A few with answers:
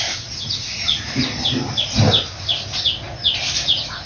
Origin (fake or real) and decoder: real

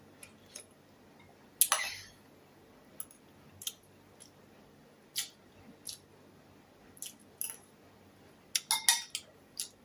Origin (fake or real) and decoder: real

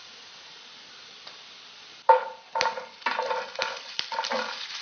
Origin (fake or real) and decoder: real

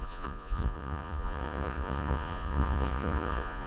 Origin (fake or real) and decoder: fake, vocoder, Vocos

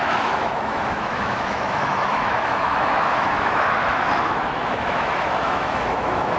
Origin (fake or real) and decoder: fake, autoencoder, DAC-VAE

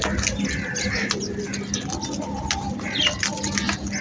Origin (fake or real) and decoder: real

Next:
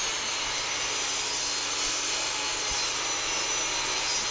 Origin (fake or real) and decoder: real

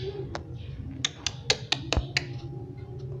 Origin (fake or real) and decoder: real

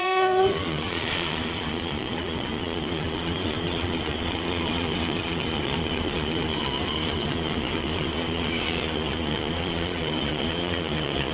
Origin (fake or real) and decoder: fake, vocoder, Vocos